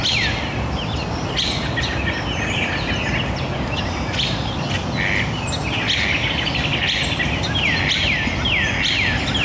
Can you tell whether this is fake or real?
real